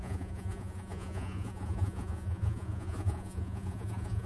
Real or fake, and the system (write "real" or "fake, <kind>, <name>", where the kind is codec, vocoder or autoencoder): fake, vocoder, Vocos